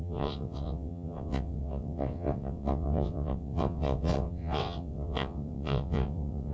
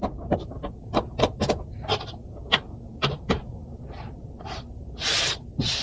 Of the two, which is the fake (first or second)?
first